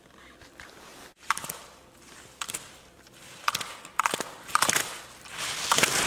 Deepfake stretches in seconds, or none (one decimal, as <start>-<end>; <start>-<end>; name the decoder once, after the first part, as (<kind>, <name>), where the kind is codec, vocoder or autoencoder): 0.9-2.6 (vocoder, BigVGAN v2)